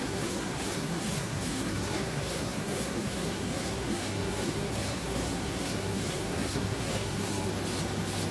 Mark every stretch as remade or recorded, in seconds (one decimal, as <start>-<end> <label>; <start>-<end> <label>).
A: 0.0-7.5 remade; 7.5-8.3 recorded